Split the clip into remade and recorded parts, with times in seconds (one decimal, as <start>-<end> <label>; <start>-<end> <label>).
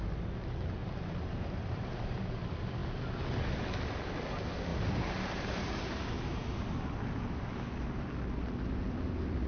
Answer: 0.0-0.8 recorded; 0.8-2.2 remade; 2.2-4.7 recorded; 4.7-5.7 remade; 5.7-9.5 recorded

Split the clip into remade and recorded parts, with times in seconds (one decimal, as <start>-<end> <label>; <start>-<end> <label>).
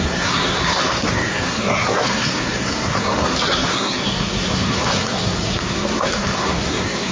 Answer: 0.0-7.1 remade